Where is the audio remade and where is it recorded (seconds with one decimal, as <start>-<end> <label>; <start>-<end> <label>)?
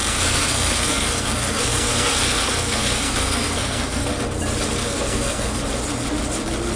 0.0-4.1 remade; 4.1-4.8 recorded; 4.8-5.6 remade; 5.6-6.8 recorded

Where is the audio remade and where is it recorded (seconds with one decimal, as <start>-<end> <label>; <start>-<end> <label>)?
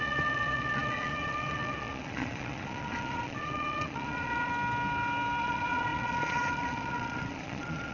0.0-4.5 remade; 4.5-5.4 recorded; 5.4-7.9 remade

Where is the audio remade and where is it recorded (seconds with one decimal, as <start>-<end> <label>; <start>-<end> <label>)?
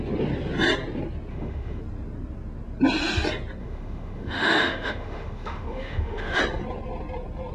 0.0-1.3 recorded; 1.3-1.8 remade; 1.8-3.6 recorded; 3.6-6.4 remade; 6.4-7.5 recorded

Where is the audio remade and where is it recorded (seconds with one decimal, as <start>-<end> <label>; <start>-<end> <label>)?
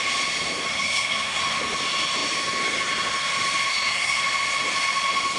0.0-0.7 recorded; 0.7-1.4 remade; 1.4-3.7 recorded; 3.7-4.2 remade; 4.2-5.4 recorded